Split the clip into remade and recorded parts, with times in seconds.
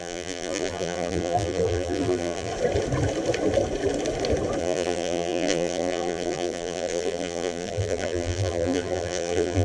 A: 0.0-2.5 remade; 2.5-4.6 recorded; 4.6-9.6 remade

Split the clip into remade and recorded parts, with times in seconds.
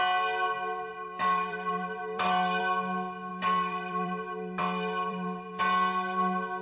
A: 0.0-0.9 recorded; 0.9-2.6 remade; 2.6-3.3 recorded; 3.3-5.6 remade; 5.6-6.6 recorded